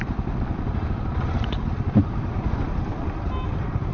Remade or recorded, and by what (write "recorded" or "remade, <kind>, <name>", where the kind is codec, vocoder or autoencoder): recorded